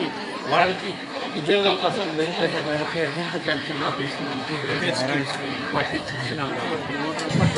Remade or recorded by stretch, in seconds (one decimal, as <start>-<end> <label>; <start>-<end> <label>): 0.0-0.6 recorded; 0.6-4.8 remade; 4.8-5.2 recorded; 5.2-6.5 remade; 6.5-7.6 recorded